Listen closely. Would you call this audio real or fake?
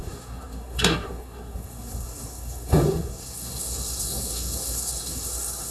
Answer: fake